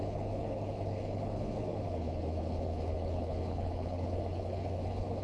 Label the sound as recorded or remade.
remade